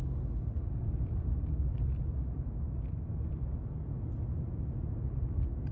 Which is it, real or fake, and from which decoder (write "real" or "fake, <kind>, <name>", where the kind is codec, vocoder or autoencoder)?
real